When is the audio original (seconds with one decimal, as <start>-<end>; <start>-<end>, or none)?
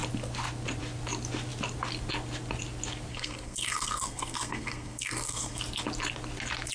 0.0-3.1; 5.6-6.7